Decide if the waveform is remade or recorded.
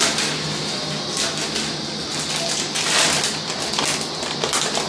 recorded